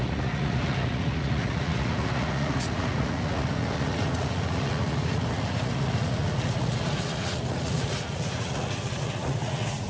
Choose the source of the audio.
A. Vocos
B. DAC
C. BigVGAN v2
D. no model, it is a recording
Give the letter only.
A